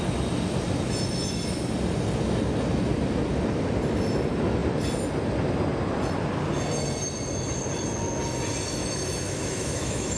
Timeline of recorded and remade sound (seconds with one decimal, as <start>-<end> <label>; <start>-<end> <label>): 0.0-8.8 recorded; 8.8-10.2 remade